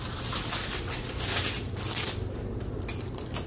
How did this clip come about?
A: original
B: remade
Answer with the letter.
A